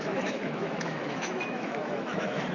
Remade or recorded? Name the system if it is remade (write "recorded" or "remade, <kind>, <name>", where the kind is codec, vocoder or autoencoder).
remade, autoencoder, DAC-VAE